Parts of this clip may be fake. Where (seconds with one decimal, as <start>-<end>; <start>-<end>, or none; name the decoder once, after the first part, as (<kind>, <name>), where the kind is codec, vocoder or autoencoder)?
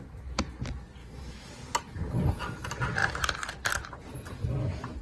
1.0-1.5 (autoencoder, DAC-VAE)